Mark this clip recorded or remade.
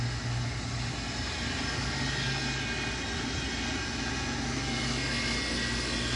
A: recorded